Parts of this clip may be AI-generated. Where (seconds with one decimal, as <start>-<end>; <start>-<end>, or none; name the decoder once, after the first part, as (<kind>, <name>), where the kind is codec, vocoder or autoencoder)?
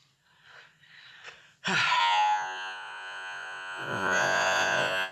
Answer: 2.0-5.1 (vocoder, Vocos)